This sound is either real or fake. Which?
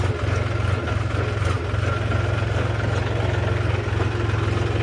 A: real